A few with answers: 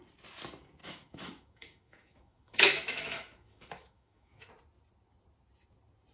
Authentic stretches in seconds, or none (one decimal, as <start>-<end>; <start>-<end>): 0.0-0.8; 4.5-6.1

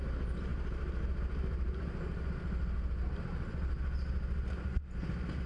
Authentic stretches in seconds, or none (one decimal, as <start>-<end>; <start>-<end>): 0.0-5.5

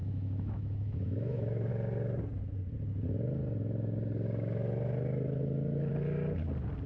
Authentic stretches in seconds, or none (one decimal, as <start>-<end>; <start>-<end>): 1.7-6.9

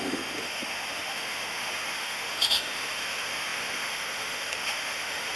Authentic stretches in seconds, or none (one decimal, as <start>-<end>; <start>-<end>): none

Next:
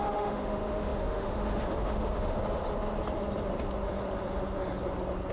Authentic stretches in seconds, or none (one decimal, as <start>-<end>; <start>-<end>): 2.4-5.3